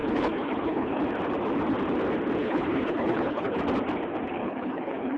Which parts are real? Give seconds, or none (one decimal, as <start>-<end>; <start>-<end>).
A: 1.0-2.4; 3.6-4.4